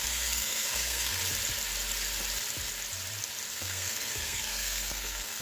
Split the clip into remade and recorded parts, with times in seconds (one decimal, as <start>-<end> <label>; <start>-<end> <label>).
0.0-1.2 remade; 1.2-3.5 recorded; 3.5-5.4 remade